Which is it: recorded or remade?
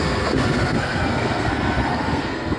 remade